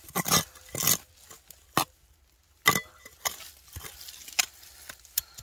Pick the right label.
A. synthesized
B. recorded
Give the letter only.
B